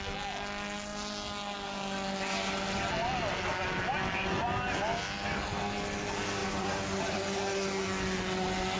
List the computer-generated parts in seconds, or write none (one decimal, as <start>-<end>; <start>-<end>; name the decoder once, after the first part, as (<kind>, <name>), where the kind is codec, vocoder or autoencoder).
6.4-7.2 (vocoder, BigVGAN v2)